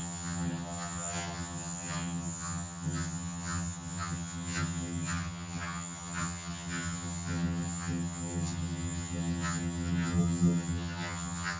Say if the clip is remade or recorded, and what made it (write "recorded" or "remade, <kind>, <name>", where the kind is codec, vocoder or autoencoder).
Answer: remade, vocoder, HiFi-GAN